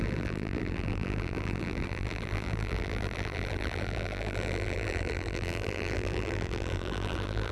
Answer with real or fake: fake